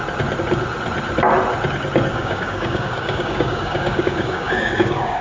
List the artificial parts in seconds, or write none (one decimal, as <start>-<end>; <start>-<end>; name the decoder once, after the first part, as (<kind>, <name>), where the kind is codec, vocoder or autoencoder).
2.1-5.2 (codec, DAC)